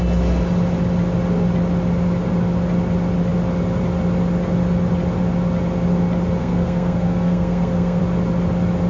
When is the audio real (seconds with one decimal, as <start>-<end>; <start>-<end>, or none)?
0.0-6.4; 8.0-8.9